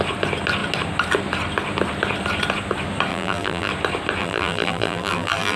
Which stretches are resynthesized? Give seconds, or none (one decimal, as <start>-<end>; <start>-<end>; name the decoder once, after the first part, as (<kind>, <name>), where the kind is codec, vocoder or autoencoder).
3.1-3.7 (vocoder, BigVGAN v2); 4.2-5.6

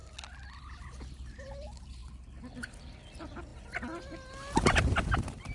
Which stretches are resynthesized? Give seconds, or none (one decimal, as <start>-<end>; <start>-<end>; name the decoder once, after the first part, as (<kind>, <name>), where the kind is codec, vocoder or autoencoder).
none

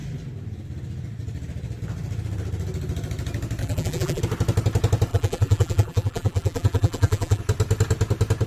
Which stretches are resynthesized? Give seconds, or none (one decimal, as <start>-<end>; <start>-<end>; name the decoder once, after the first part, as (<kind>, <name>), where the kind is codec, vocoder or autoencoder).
3.6-4.2 (vocoder, BigVGAN v2); 5.1-7.4